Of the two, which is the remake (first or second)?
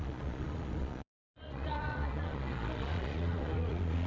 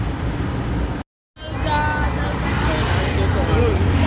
first